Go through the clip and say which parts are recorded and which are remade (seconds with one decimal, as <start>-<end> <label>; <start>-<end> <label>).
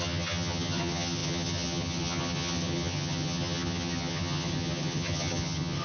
0.0-5.8 remade